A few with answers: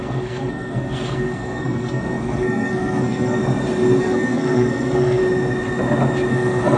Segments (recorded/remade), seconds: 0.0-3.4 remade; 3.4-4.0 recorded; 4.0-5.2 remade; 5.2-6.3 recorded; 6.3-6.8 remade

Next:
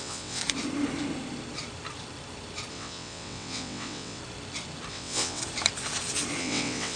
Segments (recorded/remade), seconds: 0.0-0.4 remade; 0.4-2.7 recorded; 2.7-4.2 remade; 4.2-4.9 recorded; 4.9-5.4 remade; 5.4-6.4 recorded; 6.4-7.0 remade

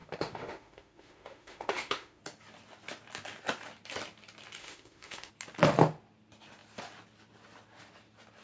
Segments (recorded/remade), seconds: 0.0-2.2 remade; 2.2-4.6 recorded; 4.6-5.3 remade; 5.3-8.4 recorded

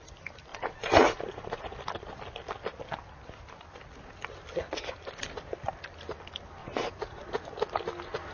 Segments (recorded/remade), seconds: 0.0-0.5 recorded; 0.5-1.6 remade; 1.6-6.6 recorded; 6.6-7.2 remade; 7.2-8.3 recorded